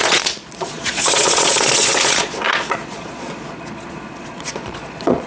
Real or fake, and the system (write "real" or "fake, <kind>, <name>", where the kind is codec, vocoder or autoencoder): fake, vocoder, Vocos